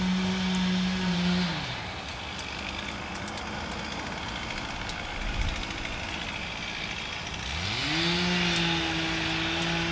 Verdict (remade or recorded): recorded